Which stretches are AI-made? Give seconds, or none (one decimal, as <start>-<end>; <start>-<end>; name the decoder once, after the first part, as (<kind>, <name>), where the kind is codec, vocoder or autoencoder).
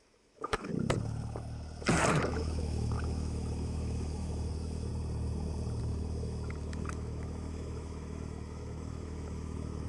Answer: 0.0-0.7 (autoencoder, DAC-VAE); 2.1-4.9; 5.8-9.9